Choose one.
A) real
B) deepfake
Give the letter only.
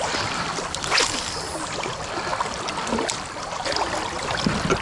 A